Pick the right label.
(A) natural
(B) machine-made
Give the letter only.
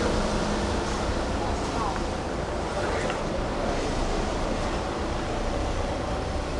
B